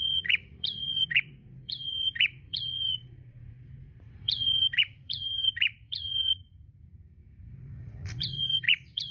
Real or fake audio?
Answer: fake